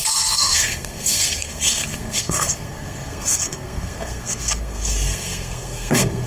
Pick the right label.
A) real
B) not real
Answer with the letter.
B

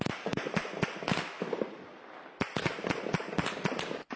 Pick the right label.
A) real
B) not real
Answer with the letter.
B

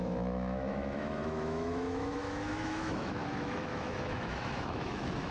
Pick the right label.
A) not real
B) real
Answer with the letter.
A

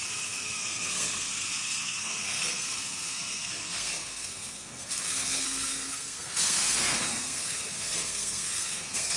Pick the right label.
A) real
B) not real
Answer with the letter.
B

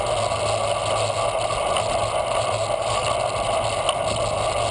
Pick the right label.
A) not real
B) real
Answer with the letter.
B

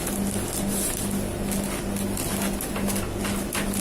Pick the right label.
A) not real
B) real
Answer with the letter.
B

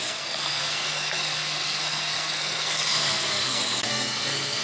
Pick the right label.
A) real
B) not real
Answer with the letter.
B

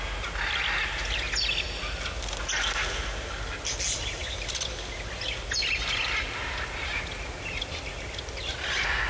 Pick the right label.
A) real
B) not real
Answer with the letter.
A